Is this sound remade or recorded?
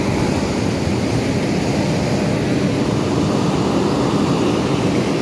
recorded